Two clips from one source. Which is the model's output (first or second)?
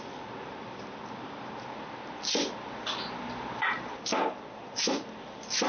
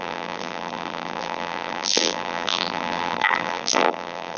second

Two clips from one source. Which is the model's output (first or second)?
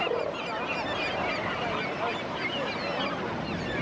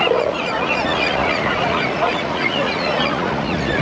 second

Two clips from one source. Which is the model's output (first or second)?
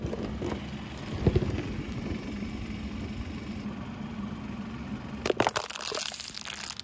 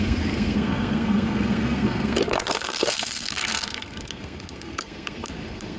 second